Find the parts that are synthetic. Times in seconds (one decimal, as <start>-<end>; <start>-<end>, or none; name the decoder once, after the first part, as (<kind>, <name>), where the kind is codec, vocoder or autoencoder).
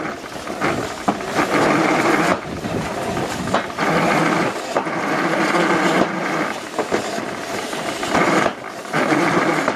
none